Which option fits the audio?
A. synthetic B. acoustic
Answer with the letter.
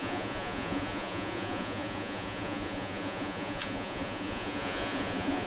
A